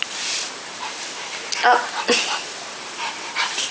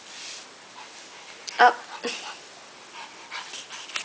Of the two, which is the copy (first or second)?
first